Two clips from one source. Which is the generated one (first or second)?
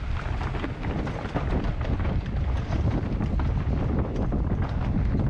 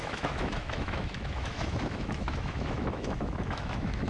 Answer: second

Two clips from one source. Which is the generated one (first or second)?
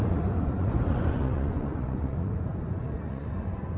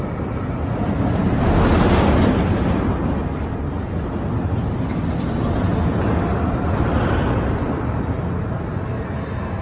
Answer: first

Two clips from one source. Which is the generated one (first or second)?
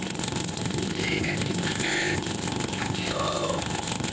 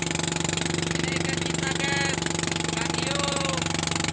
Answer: first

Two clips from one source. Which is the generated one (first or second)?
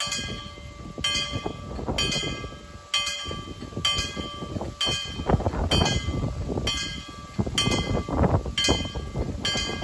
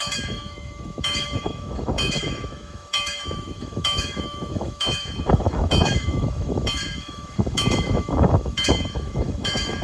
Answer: second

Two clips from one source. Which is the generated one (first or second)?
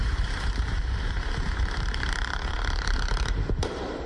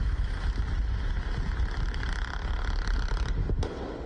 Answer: first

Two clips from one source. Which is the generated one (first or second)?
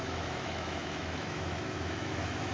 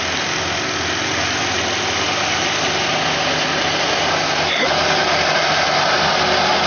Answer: first